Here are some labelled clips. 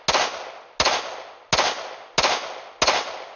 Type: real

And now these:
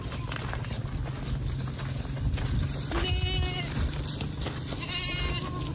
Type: real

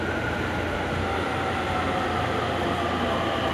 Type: real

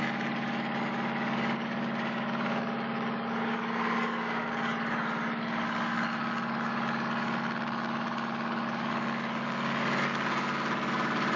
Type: fake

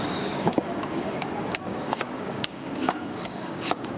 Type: fake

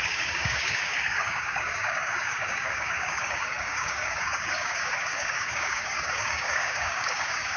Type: fake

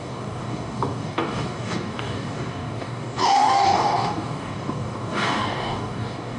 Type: fake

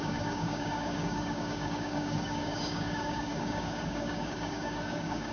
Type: fake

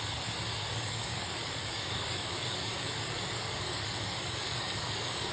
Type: fake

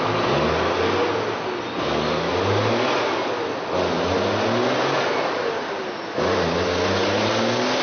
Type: real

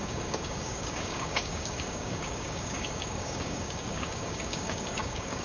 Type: fake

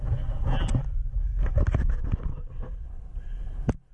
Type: real